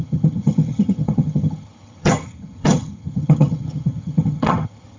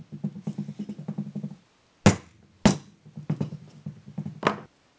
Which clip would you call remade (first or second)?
first